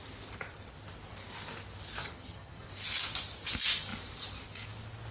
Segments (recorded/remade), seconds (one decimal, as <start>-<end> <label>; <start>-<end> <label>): 0.0-2.0 recorded; 2.0-2.7 remade; 2.7-5.1 recorded